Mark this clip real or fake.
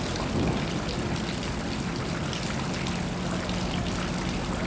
real